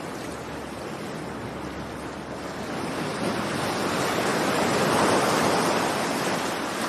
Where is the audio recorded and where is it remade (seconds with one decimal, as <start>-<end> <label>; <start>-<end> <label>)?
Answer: 0.0-4.3 recorded; 4.3-6.5 remade; 6.5-6.9 recorded